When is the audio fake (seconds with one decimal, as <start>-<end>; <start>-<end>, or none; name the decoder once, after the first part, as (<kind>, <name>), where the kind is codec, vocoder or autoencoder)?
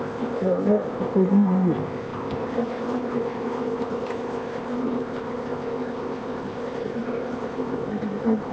0.0-8.5 (codec, ZipCodec)